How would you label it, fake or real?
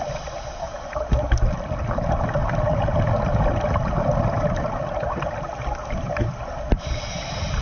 real